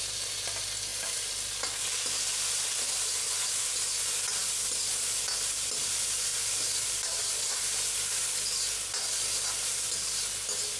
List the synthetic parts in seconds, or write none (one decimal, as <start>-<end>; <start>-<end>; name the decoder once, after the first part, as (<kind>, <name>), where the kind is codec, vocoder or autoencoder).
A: 6.3-7.3 (vocoder, BigVGAN v2)